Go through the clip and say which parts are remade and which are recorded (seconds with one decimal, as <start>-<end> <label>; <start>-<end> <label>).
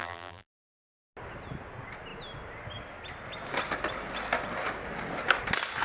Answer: 0.0-0.6 remade; 0.6-5.8 recorded